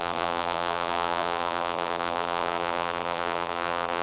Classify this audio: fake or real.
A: fake